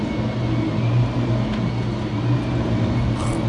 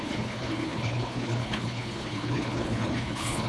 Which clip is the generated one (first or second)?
second